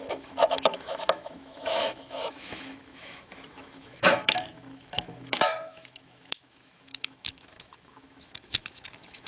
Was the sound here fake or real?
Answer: fake